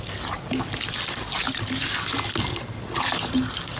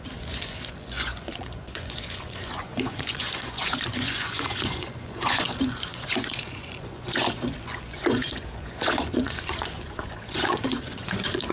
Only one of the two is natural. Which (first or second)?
first